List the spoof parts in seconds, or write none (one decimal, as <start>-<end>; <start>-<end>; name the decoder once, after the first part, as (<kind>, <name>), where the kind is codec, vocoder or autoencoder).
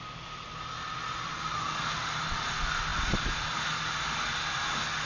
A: none